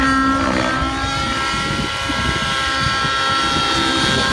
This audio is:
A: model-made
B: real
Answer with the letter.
B